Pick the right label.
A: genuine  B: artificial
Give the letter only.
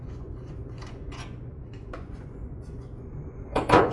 B